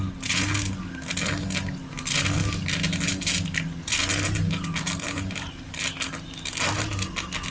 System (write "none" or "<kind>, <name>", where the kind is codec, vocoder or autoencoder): none